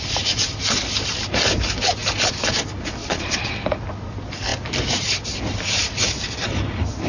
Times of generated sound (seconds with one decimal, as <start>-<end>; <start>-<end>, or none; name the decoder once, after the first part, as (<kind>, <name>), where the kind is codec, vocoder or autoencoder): 3.0-3.5 (vocoder, Vocos)